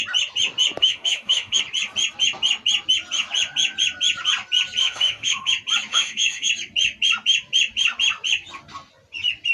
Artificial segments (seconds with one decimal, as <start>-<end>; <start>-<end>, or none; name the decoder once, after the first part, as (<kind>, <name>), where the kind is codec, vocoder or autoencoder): 0.8-1.6 (autoencoder, DAC-VAE); 4.8-5.5; 5.9-6.5